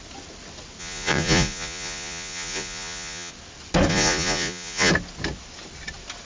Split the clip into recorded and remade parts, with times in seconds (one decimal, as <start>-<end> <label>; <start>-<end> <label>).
0.0-0.8 recorded; 0.8-3.3 remade; 3.3-3.9 recorded; 3.9-4.9 remade; 4.9-6.2 recorded